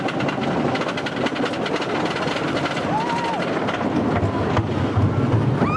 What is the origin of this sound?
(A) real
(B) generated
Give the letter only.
A